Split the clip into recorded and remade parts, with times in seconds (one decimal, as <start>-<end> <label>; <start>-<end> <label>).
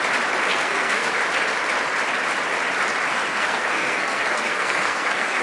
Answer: 0.0-0.5 recorded; 0.5-1.1 remade; 1.1-3.1 recorded; 3.1-5.4 remade